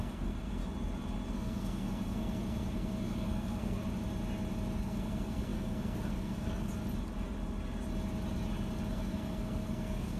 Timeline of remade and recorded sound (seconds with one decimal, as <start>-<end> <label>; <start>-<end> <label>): 0.0-0.6 remade; 0.6-1.3 recorded; 1.3-3.8 remade; 3.8-4.8 recorded; 4.8-6.7 remade; 6.7-8.9 recorded; 8.9-10.2 remade